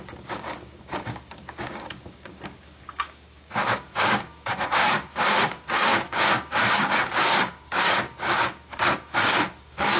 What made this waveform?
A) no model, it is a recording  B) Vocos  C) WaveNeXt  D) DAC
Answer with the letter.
D